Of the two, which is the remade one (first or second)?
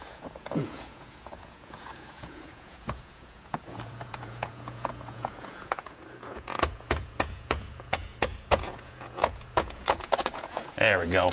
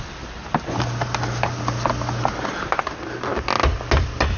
first